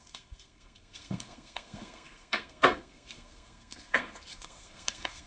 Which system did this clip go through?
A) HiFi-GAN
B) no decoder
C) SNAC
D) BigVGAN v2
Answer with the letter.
C